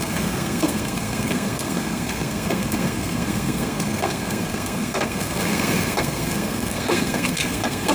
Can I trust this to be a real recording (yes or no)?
no